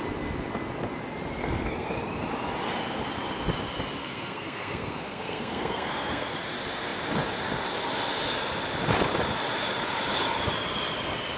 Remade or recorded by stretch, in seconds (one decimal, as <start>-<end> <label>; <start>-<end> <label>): 0.0-1.4 recorded; 1.4-1.9 remade; 1.9-4.0 recorded; 4.0-6.4 remade; 6.4-11.4 recorded